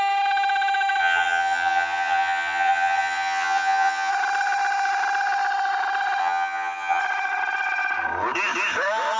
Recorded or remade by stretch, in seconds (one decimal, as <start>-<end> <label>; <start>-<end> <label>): 0.0-1.0 recorded; 1.0-4.1 remade; 4.1-6.2 recorded; 6.2-7.0 remade; 7.0-9.2 recorded